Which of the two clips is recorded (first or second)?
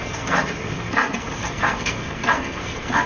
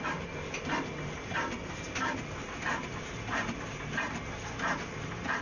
second